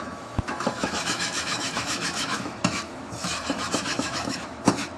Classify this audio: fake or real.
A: fake